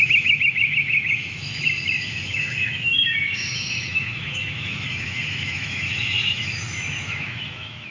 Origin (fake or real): fake